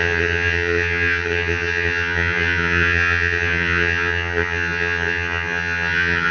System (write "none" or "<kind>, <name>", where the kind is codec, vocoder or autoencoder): vocoder, HiFi-GAN